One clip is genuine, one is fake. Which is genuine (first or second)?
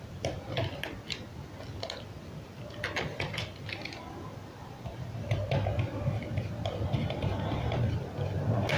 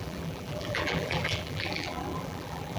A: first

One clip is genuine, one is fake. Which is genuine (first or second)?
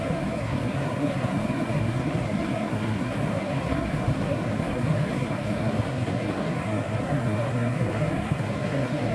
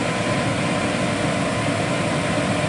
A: second